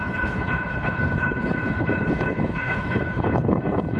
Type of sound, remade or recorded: remade